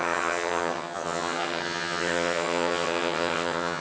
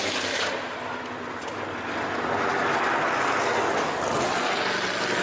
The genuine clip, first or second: second